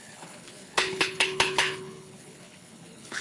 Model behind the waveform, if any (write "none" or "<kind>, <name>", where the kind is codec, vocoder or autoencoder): codec, HILCodec